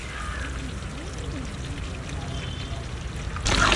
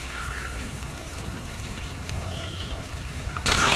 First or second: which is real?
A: first